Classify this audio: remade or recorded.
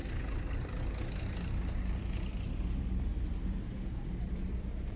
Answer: recorded